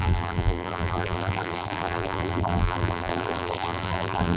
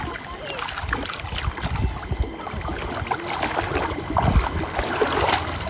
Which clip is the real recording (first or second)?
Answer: second